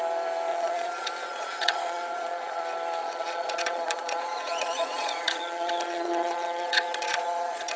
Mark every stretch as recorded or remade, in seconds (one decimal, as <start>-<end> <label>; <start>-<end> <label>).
0.0-0.5 recorded; 0.5-2.6 remade; 2.6-3.0 recorded; 3.0-7.8 remade